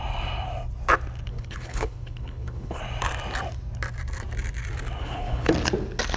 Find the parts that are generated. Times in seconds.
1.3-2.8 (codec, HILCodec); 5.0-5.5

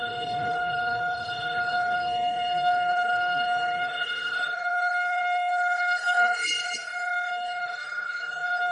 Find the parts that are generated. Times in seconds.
0.0-8.7 (codec, HILCodec)

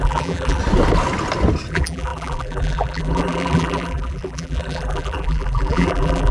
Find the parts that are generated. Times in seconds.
0.0-0.6 (vocoder, BigVGAN v2); 1.7-6.3

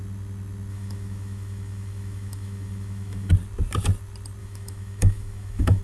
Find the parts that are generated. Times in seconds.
0.7-3.3 (autoencoder, DAC-VAE); 4.4-5.8

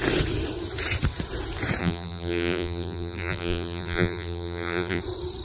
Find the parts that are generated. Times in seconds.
1.8-5.0 (vocoder, BigVGAN v2)

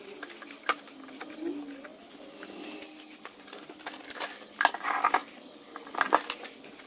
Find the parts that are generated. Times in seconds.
none